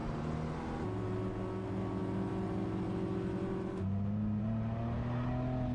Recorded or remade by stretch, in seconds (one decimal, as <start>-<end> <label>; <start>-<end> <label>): 0.0-5.7 recorded